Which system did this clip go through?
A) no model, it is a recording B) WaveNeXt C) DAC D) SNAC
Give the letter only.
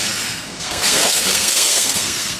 D